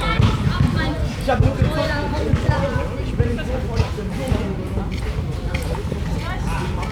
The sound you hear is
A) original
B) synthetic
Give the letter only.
A